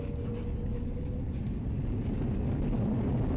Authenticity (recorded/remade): recorded